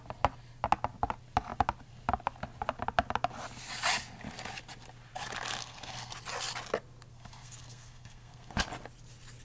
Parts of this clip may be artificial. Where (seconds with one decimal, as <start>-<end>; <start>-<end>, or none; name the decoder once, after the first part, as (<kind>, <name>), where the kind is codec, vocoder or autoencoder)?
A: 5.6-6.1 (codec, SNAC); 7.1-8.5